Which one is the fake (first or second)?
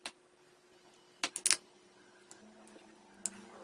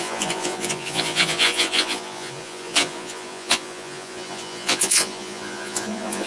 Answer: second